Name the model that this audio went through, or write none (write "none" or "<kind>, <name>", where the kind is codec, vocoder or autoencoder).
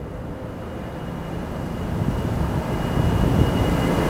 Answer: none